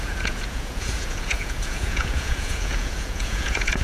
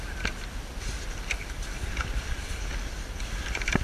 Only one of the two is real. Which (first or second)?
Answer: second